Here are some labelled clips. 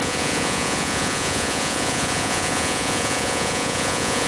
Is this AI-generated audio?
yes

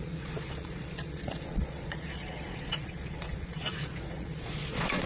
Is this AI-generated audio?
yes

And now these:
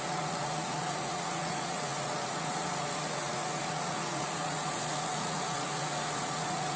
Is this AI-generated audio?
yes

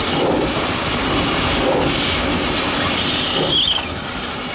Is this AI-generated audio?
no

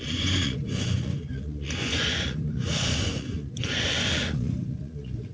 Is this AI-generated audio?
yes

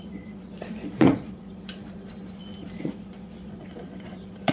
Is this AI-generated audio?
yes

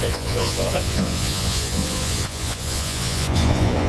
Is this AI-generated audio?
yes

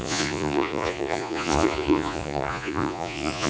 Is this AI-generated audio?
yes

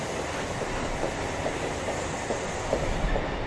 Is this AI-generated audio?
no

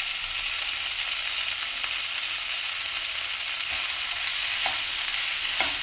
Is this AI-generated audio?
no